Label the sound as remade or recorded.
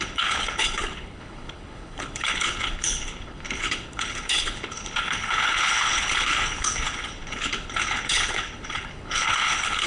remade